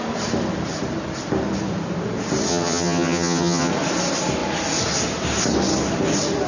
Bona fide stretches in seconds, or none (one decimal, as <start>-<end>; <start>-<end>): 0.0-2.5; 3.7-6.5